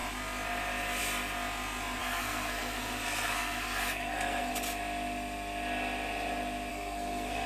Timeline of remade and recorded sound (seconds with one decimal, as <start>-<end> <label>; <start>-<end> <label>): 0.0-2.0 recorded; 2.0-4.5 remade; 4.5-6.7 recorded; 6.7-7.5 remade